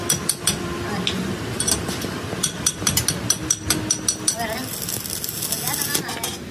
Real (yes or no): yes